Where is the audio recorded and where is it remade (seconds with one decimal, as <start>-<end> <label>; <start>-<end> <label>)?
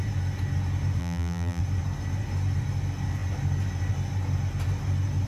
0.0-1.0 recorded; 1.0-1.6 remade; 1.6-5.3 recorded